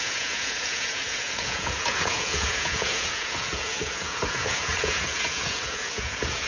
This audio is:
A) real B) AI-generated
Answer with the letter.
B